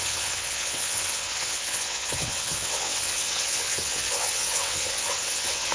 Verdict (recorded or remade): remade